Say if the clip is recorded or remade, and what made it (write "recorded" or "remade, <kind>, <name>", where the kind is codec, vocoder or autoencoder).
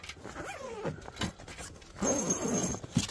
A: recorded